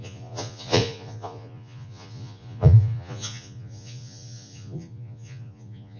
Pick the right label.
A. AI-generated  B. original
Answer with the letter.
A